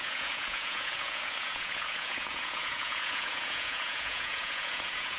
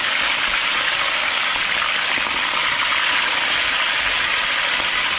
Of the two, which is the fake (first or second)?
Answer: first